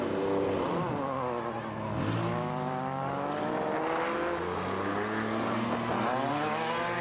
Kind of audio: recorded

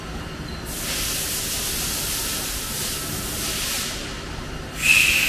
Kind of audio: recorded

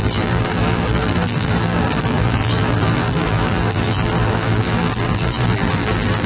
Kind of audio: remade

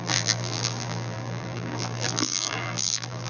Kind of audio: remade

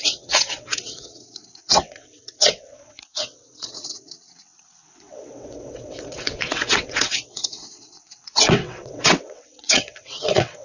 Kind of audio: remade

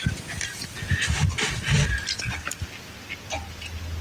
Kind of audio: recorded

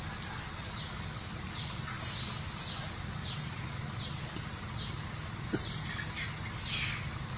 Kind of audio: recorded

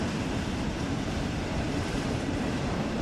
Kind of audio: remade